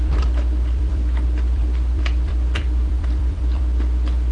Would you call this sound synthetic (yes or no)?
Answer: yes